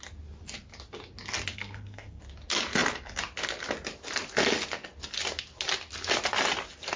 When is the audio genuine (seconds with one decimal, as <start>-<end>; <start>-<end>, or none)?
0.0-1.5; 2.2-7.0